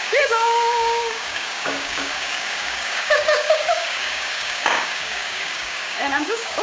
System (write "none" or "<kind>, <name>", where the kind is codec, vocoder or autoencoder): codec, DAC